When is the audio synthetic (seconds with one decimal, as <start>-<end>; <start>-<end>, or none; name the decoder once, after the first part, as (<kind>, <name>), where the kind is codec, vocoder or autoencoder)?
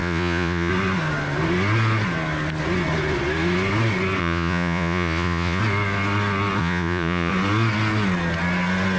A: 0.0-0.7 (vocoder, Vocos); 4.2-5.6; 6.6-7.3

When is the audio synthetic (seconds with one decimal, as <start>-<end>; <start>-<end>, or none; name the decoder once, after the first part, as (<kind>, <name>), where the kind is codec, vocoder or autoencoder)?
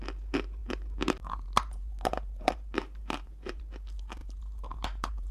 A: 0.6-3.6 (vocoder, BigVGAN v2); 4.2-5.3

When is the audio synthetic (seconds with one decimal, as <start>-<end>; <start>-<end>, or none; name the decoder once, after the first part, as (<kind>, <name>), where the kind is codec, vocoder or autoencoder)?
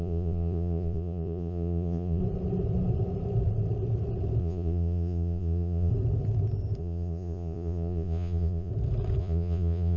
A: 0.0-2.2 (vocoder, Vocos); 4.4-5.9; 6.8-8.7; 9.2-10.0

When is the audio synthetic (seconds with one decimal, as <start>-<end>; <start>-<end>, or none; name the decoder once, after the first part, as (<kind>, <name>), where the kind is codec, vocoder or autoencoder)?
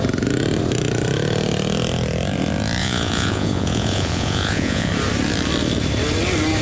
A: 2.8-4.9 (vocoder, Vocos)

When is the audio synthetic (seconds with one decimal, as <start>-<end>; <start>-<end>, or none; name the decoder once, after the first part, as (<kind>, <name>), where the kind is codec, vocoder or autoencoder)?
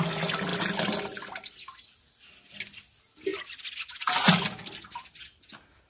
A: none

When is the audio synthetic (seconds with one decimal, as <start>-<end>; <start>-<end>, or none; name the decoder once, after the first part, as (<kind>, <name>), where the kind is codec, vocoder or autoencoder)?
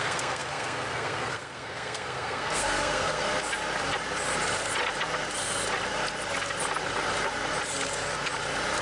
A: 0.0-3.3 (codec, SNAC)